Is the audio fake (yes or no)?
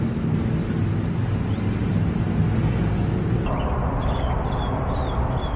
no